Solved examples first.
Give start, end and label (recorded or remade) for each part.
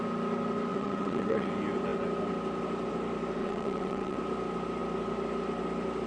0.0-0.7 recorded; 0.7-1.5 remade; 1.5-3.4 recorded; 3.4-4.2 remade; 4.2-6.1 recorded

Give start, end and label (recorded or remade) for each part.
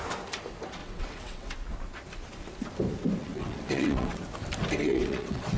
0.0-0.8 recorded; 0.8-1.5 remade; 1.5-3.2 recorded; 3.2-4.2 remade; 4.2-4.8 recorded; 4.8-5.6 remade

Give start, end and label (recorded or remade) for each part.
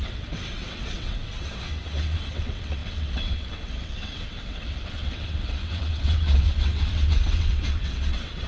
0.0-8.5 remade